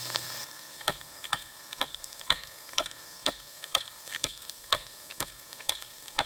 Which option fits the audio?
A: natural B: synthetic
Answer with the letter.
B